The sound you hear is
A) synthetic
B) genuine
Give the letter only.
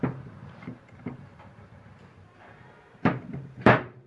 A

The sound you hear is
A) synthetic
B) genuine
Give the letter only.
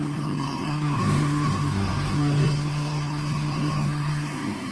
A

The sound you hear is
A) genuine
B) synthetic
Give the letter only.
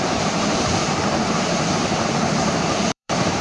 B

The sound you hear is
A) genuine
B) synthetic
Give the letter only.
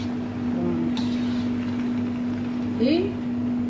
A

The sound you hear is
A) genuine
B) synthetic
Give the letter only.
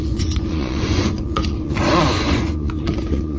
B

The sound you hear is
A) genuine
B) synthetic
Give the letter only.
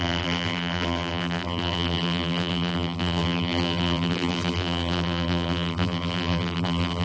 B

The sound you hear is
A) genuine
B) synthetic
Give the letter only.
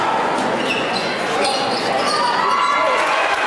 B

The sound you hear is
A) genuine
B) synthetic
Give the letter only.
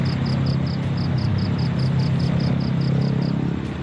A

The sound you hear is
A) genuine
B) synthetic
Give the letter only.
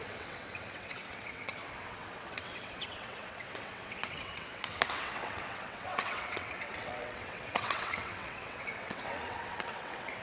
B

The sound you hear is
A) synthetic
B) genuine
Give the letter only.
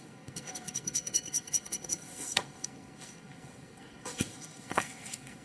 A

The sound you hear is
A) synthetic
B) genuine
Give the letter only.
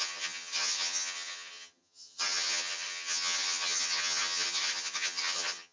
A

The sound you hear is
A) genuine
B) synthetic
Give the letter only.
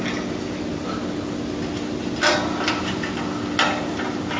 A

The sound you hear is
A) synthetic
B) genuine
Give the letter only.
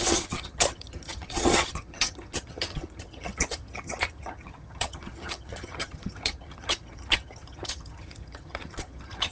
A